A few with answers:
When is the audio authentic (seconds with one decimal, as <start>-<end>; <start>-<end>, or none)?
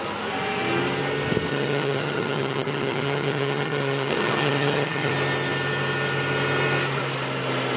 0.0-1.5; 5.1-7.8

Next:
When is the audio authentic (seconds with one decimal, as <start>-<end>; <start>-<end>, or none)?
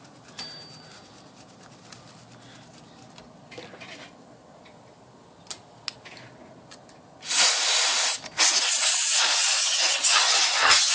0.0-9.6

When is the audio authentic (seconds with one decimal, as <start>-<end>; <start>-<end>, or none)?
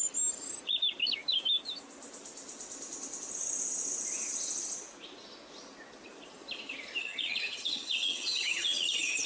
0.0-7.0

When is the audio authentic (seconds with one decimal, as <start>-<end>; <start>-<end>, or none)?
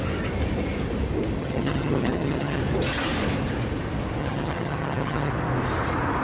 0.0-1.4; 2.6-4.2; 5.3-6.2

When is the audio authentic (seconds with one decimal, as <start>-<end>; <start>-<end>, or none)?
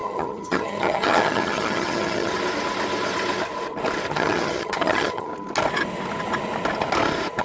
2.3-4.1; 5.3-7.4